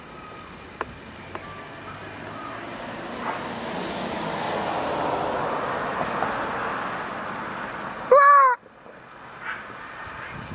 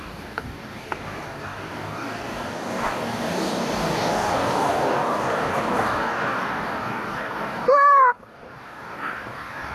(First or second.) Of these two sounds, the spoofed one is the second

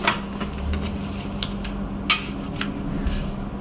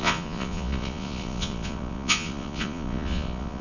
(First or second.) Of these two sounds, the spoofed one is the second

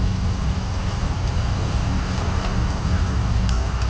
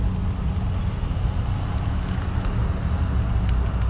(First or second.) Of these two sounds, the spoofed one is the first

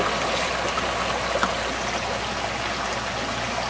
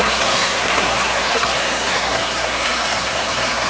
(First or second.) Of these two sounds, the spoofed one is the second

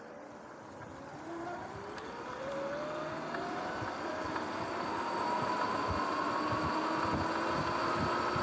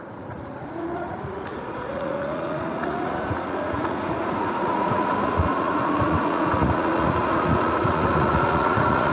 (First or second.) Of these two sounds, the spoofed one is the second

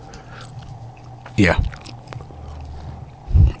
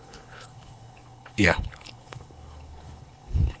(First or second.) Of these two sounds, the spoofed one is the second